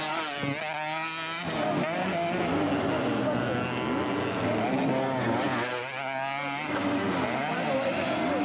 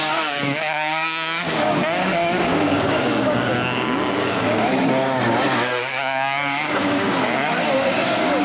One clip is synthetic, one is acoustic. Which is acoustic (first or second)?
first